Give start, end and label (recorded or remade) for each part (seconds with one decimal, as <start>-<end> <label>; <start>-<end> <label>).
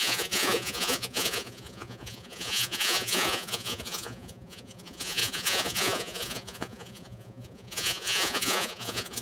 0.0-9.2 remade